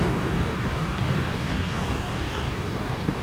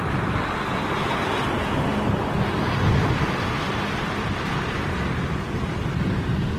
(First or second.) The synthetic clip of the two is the first